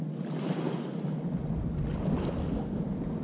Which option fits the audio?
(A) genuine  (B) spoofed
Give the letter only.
A